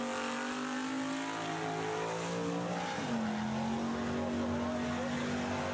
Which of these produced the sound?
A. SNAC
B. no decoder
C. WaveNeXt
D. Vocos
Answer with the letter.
B